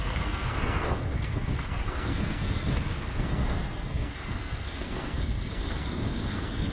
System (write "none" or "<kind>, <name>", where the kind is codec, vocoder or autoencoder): codec, SNAC